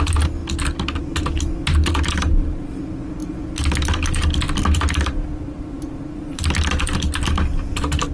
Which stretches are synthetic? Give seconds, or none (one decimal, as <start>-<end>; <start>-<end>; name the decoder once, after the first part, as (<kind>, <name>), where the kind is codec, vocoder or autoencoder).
2.1-2.7 (vocoder, BigVGAN v2)